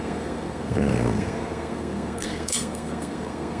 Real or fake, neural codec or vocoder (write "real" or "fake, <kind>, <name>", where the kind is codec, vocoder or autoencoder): fake, codec, SNAC